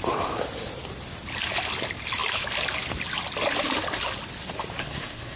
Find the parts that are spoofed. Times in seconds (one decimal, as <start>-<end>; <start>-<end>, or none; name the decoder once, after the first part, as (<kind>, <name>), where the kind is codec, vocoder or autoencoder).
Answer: 4.8-5.4 (codec, SNAC)